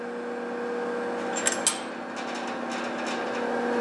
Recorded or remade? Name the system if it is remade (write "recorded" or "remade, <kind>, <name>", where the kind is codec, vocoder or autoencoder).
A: recorded